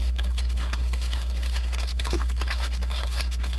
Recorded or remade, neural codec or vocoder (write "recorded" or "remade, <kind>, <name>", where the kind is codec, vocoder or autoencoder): remade, codec, SNAC